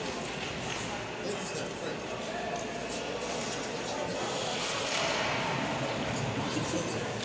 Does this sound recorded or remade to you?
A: recorded